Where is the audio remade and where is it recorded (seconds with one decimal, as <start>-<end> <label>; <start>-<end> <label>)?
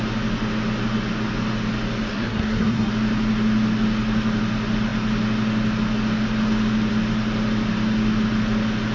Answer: 0.0-2.1 recorded; 2.1-2.9 remade; 2.9-8.9 recorded